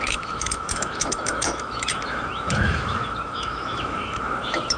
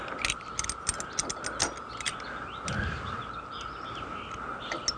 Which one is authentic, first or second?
second